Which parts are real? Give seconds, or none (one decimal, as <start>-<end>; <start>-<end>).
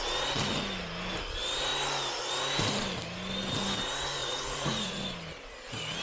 0.0-4.2; 5.0-6.0